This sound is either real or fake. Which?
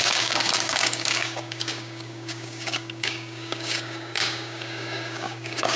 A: fake